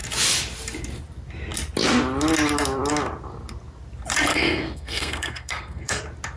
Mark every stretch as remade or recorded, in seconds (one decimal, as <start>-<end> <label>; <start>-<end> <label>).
0.0-4.3 recorded; 4.3-6.0 remade; 6.0-6.4 recorded

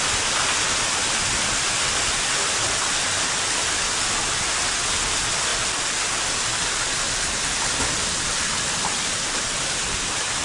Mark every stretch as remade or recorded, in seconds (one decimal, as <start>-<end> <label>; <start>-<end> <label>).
0.0-10.4 recorded

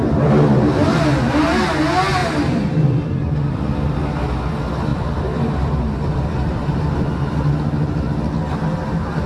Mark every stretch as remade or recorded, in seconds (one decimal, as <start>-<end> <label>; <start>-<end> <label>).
0.0-2.2 recorded; 2.2-3.6 remade; 3.6-4.9 recorded; 4.9-7.6 remade; 7.6-9.3 recorded

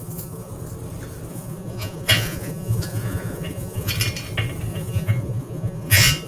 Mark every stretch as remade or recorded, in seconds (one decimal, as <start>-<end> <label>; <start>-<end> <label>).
0.0-0.5 remade; 0.5-1.3 recorded; 1.3-3.9 remade; 3.9-4.7 recorded; 4.7-6.3 remade